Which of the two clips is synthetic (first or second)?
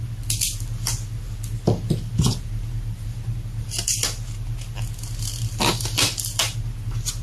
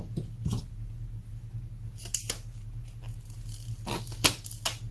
first